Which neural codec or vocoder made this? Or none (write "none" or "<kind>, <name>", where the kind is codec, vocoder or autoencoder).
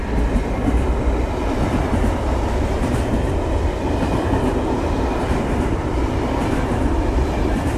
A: none